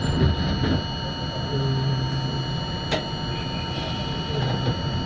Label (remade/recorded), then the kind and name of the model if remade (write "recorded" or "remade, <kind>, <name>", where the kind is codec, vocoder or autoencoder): recorded